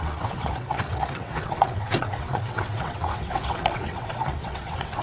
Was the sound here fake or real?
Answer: fake